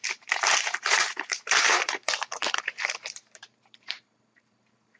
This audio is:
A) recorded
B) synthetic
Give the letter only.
B